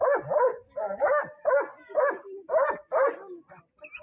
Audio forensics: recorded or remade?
recorded